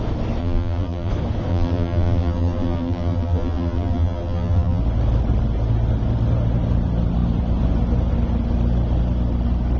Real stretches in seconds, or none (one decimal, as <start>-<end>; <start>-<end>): 0.0-0.4; 1.1-1.5; 4.8-9.8